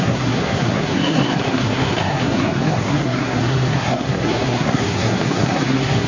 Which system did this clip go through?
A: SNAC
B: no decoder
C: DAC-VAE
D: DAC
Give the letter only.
A